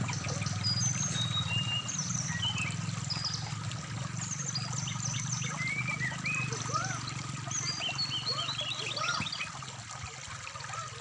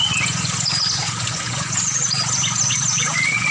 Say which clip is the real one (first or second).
first